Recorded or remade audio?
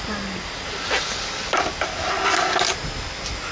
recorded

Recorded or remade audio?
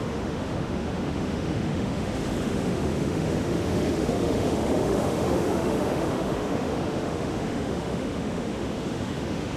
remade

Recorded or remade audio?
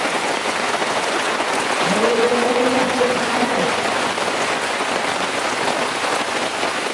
remade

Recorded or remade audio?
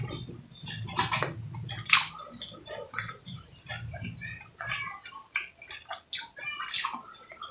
recorded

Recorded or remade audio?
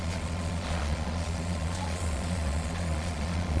remade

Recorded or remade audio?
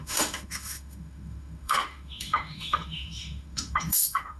remade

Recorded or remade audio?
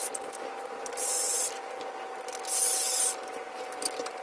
recorded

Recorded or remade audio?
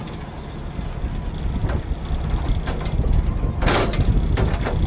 recorded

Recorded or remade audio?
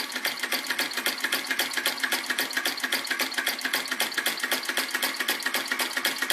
recorded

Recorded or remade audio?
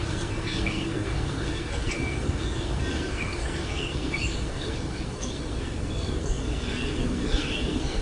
remade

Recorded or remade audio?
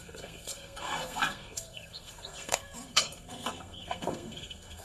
remade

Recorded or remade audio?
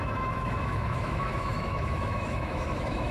remade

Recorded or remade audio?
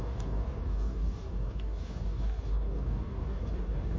remade